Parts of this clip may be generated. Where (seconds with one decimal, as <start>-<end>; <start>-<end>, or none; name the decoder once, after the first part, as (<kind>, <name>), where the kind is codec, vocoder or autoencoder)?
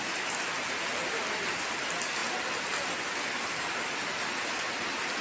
none